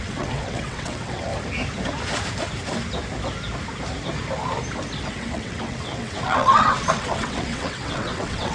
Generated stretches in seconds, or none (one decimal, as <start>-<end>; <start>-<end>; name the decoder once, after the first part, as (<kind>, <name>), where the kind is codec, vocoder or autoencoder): 0.0-1.3 (vocoder, WaveNeXt); 5.1-8.5